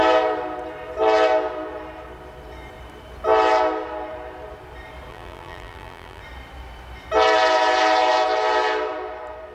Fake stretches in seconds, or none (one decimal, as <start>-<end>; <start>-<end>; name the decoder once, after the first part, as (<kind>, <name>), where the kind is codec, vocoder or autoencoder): 5.1-6.2 (vocoder, BigVGAN v2)